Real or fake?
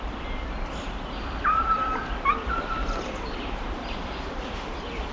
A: fake